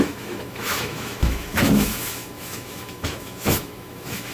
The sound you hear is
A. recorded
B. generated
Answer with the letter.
B